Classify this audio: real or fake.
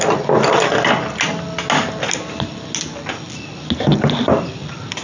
real